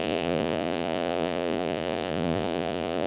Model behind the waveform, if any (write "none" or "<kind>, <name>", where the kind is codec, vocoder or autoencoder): vocoder, Vocos